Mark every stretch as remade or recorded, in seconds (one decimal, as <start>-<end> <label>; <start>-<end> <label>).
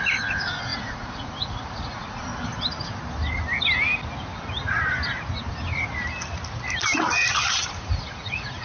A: 0.0-2.3 remade; 2.3-7.5 recorded; 7.5-8.6 remade